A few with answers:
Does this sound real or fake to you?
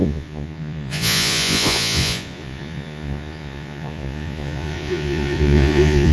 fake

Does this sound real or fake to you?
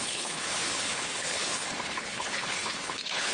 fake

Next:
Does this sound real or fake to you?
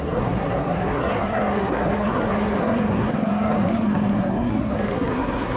fake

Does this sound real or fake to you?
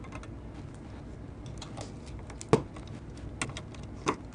real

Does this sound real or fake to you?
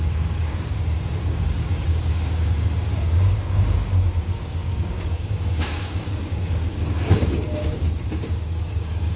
fake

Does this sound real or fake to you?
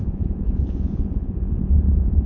fake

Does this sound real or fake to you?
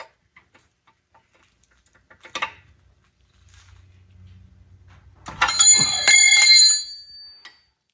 real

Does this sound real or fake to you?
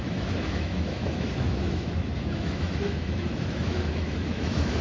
fake